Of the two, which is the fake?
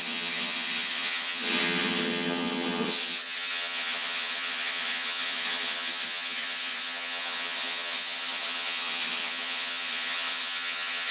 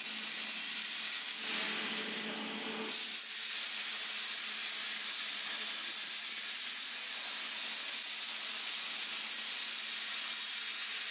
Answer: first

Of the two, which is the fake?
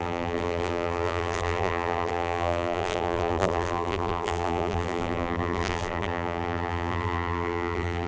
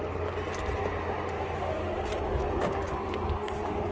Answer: first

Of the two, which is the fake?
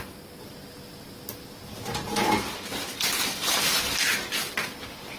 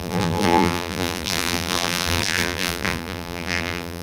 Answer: second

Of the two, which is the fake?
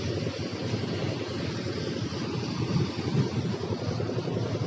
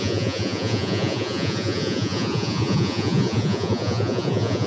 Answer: second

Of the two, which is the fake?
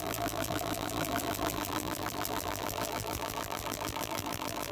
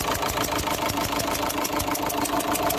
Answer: first